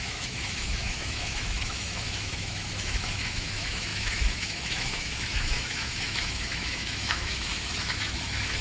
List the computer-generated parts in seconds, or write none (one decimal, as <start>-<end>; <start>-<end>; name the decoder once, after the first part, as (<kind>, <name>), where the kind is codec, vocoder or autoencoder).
0.0-8.6 (autoencoder, DAC-VAE)